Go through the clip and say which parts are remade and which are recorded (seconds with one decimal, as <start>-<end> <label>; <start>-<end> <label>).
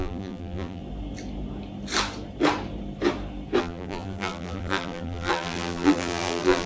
0.0-0.8 remade; 0.8-3.6 recorded; 3.6-6.7 remade